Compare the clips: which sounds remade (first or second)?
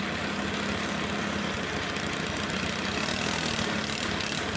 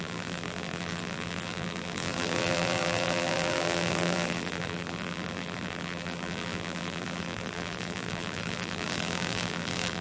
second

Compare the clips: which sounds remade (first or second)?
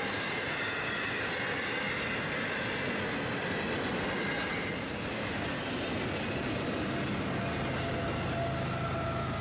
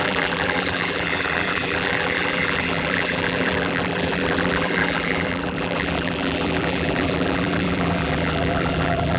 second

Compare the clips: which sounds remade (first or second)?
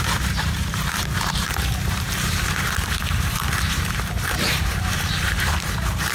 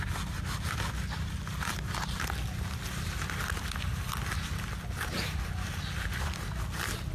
first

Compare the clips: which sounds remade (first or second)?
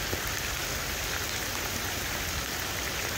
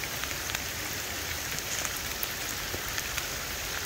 second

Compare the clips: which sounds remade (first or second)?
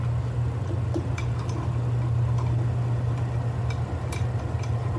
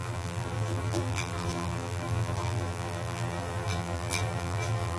second